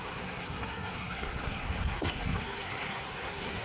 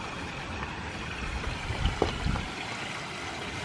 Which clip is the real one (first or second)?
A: second